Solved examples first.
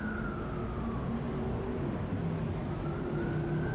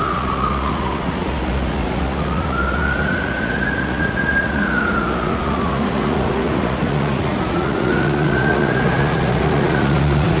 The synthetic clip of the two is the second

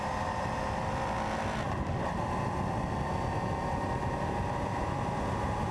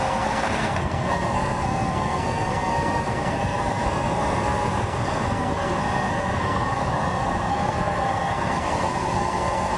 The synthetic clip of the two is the second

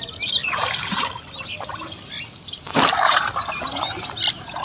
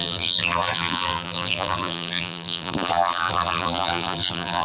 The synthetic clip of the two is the second